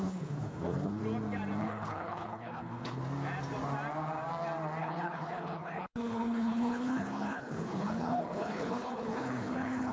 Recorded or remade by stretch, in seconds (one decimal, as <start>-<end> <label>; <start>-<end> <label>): 0.0-1.0 remade; 1.0-1.6 recorded; 1.6-3.0 remade; 3.0-4.8 recorded; 4.8-9.9 remade